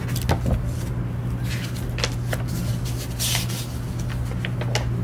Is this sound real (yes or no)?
yes